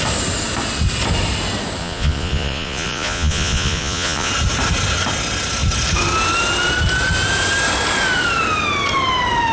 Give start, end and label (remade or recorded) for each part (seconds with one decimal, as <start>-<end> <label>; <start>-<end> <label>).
0.0-1.8 recorded; 1.8-4.3 remade; 4.3-9.5 recorded